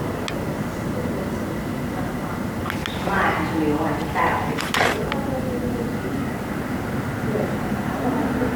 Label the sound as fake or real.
real